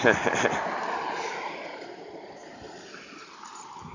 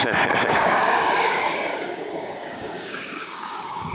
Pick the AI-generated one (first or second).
second